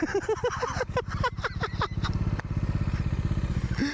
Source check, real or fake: real